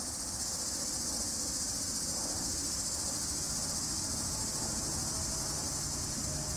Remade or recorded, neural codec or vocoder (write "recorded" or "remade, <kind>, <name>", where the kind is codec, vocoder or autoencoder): recorded